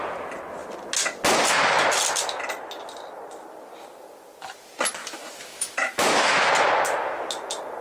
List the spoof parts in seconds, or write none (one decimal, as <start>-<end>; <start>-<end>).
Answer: 5.0-6.5